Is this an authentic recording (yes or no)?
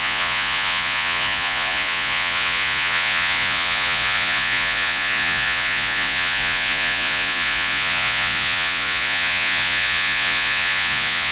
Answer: no